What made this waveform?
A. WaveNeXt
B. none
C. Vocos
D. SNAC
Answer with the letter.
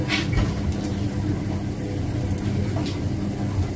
B